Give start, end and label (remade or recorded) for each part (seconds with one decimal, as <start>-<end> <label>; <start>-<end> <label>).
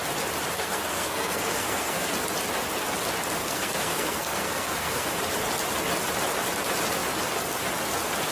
0.0-0.5 recorded; 0.5-2.1 remade; 2.1-3.4 recorded; 3.4-5.1 remade; 5.1-8.3 recorded